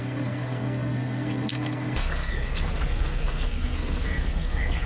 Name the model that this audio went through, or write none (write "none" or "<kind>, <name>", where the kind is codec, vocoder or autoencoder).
codec, SNAC